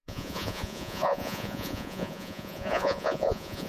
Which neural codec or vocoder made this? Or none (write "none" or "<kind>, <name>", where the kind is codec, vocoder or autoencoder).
vocoder, Vocos